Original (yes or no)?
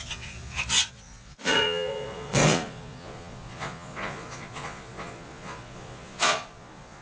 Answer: no